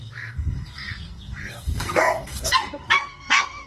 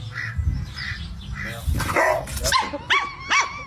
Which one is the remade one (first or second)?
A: first